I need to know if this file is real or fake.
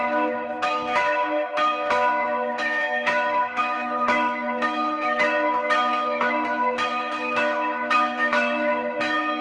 fake